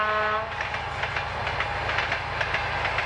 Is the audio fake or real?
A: real